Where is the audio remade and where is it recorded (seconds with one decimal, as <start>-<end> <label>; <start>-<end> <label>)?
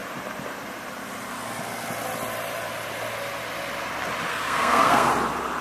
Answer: 0.0-4.3 recorded; 4.3-5.1 remade; 5.1-5.6 recorded